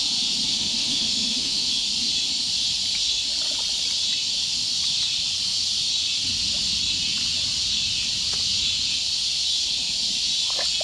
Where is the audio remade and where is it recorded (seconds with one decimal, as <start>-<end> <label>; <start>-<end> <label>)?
0.0-0.5 recorded; 0.5-1.7 remade; 1.7-10.8 recorded